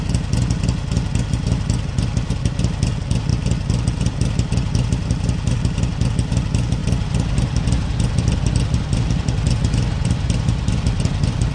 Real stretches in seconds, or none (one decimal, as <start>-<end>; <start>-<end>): 0.0-11.5